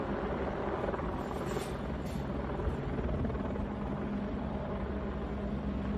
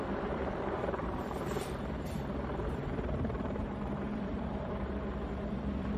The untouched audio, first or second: first